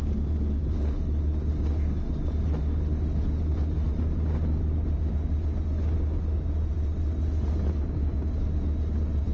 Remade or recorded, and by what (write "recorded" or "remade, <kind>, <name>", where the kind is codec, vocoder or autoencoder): recorded